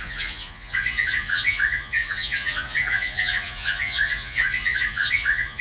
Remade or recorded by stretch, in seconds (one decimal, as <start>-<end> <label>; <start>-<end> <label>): 0.0-5.6 remade